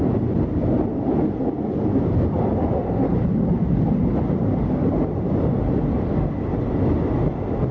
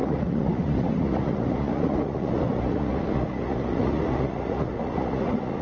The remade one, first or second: second